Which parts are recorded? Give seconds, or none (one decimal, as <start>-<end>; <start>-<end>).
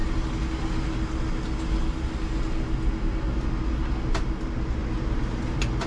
0.0-5.9